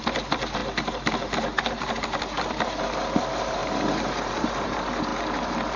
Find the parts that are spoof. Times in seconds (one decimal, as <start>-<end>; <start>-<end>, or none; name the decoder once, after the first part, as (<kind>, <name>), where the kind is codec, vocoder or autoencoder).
0.0-0.6 (vocoder, BigVGAN v2); 2.2-3.6; 4.3-5.8